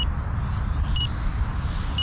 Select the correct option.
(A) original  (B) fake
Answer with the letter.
A